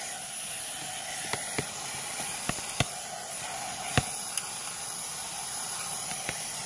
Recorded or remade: recorded